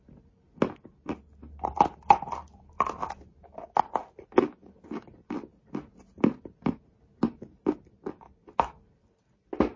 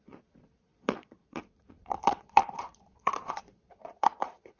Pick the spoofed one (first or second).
second